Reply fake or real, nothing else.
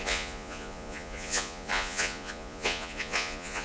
fake